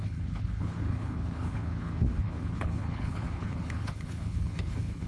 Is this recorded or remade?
remade